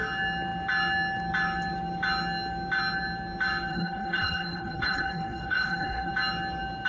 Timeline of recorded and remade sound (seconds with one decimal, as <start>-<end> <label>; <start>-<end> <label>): 0.0-3.7 recorded; 3.7-6.1 remade; 6.1-6.9 recorded